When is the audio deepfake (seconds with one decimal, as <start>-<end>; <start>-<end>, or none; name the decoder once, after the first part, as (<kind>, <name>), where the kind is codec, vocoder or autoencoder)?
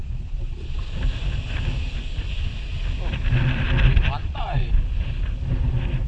0.0-0.8 (vocoder, Vocos); 4.2-4.7